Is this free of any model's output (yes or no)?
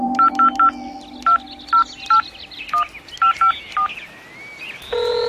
yes